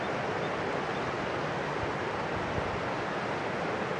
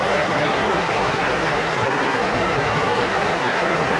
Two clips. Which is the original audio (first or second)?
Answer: first